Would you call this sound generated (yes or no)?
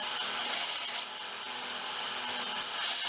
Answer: no